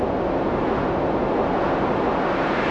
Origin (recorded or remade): recorded